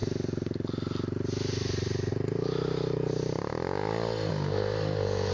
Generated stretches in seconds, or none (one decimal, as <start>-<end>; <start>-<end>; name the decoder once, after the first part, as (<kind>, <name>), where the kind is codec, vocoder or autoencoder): 2.1-3.5 (vocoder, BigVGAN v2); 4.3-5.3